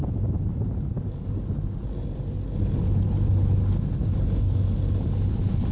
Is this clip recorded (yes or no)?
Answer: yes